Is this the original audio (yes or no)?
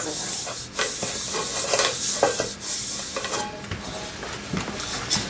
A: yes